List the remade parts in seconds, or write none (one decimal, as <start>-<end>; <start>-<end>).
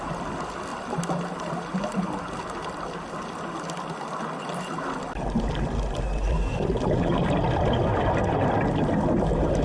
none